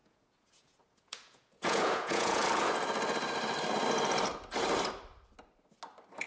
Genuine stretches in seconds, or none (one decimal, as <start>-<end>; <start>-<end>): 2.4-6.3